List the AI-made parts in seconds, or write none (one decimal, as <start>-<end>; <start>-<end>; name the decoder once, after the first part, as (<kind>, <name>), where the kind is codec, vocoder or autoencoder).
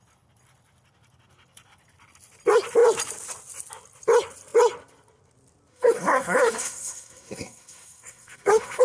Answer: 5.7-8.8 (codec, SNAC)